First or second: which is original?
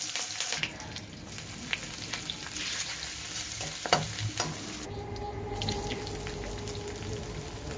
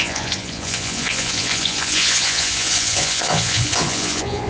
first